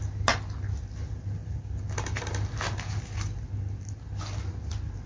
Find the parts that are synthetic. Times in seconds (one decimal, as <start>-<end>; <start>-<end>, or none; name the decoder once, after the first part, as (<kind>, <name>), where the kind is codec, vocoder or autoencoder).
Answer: none

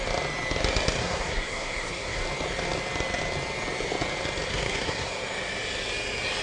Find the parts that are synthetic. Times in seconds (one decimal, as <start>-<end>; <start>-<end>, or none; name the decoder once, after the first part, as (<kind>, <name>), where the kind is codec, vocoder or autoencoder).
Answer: 1.0-2.2 (codec, SNAC); 4.5-5.1

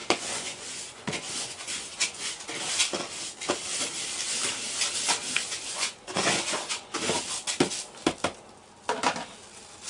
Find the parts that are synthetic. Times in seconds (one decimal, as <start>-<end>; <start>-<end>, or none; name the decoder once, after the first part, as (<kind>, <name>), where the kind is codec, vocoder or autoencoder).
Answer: 0.0-2.4 (vocoder, Vocos); 5.4-6.9

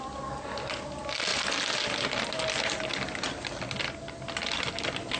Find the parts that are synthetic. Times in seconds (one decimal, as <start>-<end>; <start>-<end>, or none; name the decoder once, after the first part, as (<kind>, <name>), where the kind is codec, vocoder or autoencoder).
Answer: none

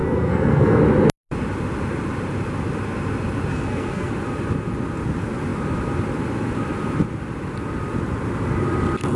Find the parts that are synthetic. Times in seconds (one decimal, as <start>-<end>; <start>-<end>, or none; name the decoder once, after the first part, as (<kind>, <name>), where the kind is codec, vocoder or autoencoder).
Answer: 0.0-0.8 (codec, SNAC); 3.5-4.1